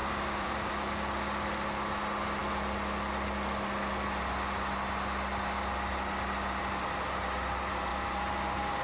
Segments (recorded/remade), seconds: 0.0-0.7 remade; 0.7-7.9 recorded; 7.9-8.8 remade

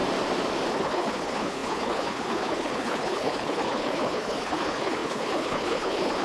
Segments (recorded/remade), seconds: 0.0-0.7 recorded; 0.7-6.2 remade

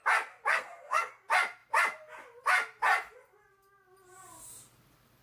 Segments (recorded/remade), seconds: 0.0-0.5 recorded; 0.5-1.1 remade; 1.1-5.2 recorded